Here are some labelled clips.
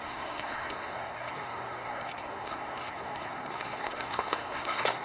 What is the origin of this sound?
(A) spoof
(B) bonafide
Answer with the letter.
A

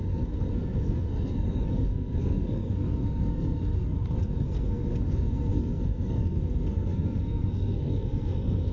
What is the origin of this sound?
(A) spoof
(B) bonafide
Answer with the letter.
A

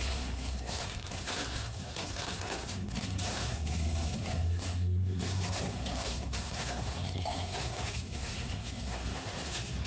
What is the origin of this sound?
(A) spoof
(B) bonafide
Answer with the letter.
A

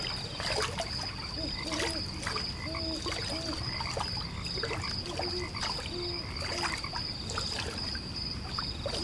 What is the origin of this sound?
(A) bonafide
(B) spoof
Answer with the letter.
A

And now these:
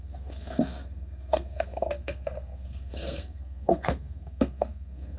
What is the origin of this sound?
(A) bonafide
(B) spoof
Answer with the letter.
B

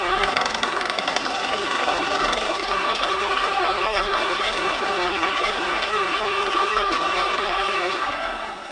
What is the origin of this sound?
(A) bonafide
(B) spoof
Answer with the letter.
B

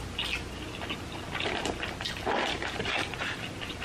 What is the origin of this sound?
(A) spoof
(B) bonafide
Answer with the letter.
B